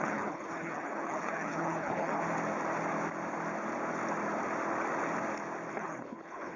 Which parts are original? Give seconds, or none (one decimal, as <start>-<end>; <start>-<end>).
2.2-5.7